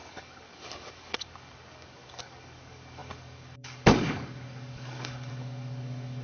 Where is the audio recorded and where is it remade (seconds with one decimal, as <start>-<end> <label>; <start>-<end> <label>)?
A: 0.0-6.2 remade

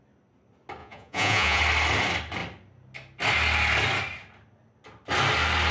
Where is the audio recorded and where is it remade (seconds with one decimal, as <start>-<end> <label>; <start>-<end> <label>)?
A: 0.0-0.8 recorded; 0.8-1.6 remade; 1.6-5.7 recorded

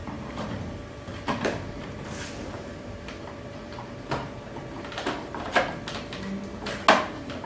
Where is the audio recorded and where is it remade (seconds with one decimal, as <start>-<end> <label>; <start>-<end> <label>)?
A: 0.0-0.6 remade; 0.6-1.1 recorded; 1.1-5.6 remade; 5.6-7.5 recorded